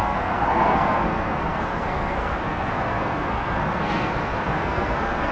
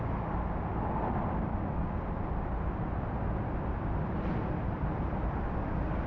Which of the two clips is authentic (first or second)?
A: second